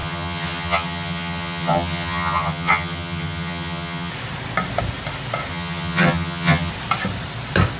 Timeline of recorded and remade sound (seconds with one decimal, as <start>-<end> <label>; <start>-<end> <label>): 0.0-4.1 remade; 4.1-5.5 recorded; 5.5-6.7 remade; 6.7-7.8 recorded